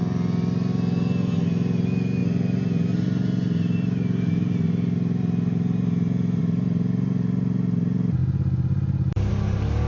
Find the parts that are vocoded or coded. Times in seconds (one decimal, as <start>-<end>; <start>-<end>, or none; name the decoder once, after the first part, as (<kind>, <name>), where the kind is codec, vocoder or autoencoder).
none